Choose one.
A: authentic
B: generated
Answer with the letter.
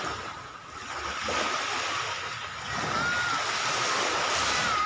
A